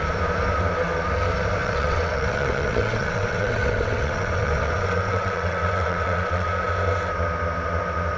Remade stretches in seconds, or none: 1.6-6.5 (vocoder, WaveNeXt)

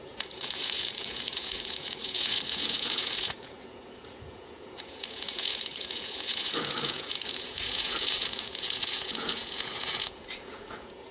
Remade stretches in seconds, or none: 0.0-11.1 (vocoder, Vocos)

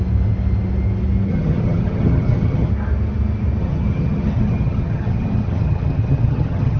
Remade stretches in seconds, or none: 1.3-2.7 (vocoder, HiFi-GAN); 3.6-6.8

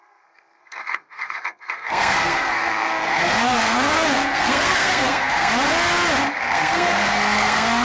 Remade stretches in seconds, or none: 0.0-5.5 (codec, SNAC); 6.3-7.8

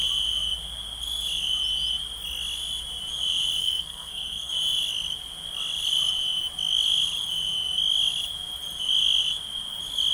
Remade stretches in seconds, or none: 3.6-4.5 (codec, SNAC)

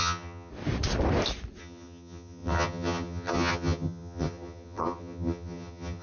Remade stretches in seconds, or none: 0.0-0.5 (vocoder, HiFi-GAN); 1.6-6.0